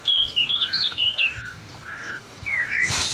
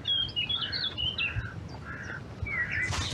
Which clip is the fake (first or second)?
first